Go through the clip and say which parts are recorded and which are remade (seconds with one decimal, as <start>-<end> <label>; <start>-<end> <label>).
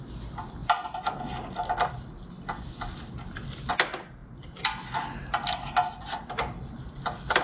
0.0-7.4 recorded